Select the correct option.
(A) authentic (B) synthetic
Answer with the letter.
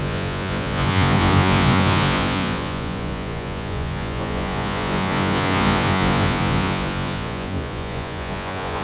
B